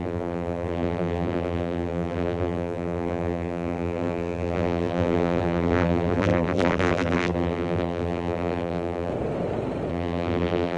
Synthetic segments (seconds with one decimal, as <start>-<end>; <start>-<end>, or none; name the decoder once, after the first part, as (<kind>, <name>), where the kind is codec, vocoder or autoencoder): 0.0-9.1 (vocoder, BigVGAN v2); 9.9-10.8